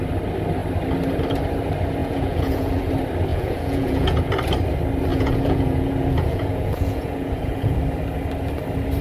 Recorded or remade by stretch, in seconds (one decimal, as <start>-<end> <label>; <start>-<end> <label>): 0.0-2.0 recorded; 2.0-2.9 remade; 2.9-3.3 recorded; 3.3-4.3 remade; 4.3-5.1 recorded; 5.1-7.8 remade; 7.8-9.0 recorded